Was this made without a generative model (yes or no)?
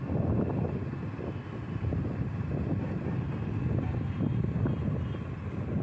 yes